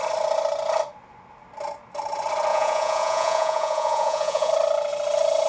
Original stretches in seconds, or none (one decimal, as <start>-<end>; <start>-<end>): 0.0-2.5; 4.5-5.5